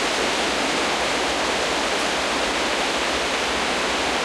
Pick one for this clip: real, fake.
real